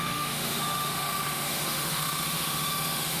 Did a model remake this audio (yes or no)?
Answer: yes